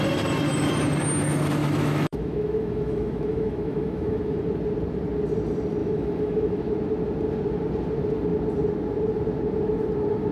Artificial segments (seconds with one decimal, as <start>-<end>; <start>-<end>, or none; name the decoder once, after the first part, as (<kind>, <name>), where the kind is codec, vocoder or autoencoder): 1.6-4.4 (autoencoder, DAC-VAE); 5.8-6.7